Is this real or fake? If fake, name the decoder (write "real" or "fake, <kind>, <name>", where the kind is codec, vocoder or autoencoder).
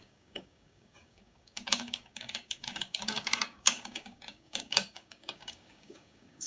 fake, codec, DAC